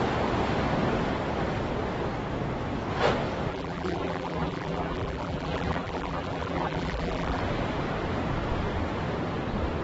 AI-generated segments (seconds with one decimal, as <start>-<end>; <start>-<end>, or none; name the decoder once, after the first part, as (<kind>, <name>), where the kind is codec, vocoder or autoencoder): 3.5-7.4 (vocoder, BigVGAN v2)